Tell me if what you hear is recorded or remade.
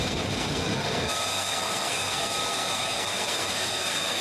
remade